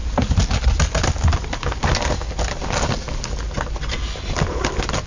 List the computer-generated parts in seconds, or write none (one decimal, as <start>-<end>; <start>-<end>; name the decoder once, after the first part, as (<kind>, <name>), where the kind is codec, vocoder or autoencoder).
none